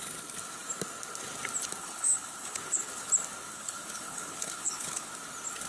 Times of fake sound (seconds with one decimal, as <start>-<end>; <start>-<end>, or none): 1.8-3.1; 3.5-5.1